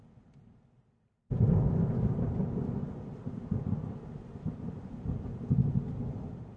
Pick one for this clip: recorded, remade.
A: recorded